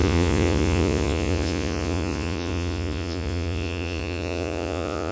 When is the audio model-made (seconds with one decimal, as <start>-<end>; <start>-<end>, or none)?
0.0-5.1